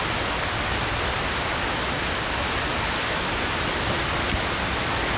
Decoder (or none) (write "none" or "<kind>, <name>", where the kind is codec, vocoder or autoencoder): none